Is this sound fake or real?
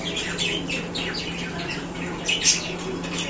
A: real